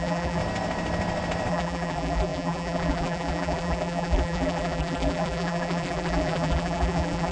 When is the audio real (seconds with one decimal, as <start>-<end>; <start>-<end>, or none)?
0.4-1.5